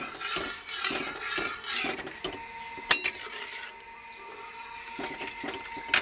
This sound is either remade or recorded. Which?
recorded